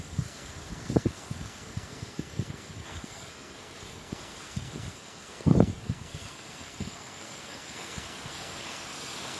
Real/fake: fake